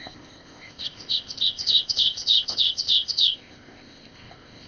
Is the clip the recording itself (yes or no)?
no